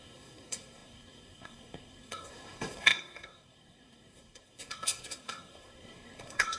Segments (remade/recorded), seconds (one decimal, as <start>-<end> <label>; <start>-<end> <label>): 0.0-6.6 remade